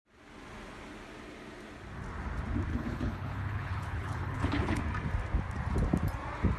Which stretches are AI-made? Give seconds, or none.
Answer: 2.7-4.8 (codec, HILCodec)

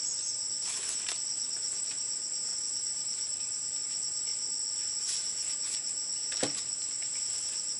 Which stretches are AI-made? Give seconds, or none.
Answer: none

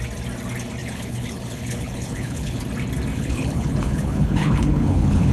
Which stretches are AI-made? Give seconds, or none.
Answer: 0.8-2.6 (codec, HILCodec); 3.1-5.3

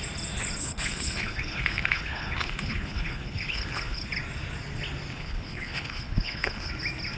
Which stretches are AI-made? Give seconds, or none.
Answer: 0.6-4.1 (codec, HILCodec); 5.1-6.7

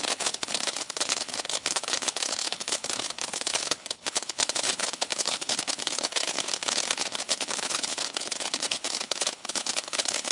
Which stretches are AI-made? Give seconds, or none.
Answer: 0.0-10.3 (codec, HILCodec)

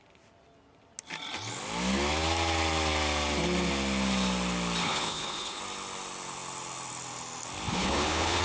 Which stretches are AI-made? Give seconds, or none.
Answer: 4.8-5.6 (codec, HILCodec); 7.7-8.4

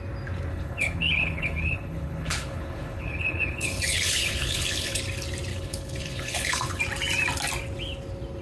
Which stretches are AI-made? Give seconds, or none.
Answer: 0.5-5.0 (codec, HILCodec); 5.5-6.8

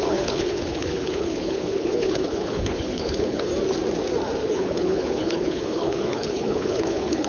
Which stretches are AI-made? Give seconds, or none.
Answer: 0.0-3.5 (codec, HILCodec); 4.5-7.3